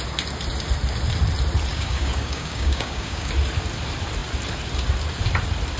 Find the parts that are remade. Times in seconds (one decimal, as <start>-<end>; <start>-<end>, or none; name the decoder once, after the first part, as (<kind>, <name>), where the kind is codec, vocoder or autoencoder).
1.7-3.3 (codec, DAC)